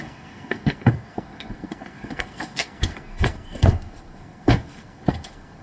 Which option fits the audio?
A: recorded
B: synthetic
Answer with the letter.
B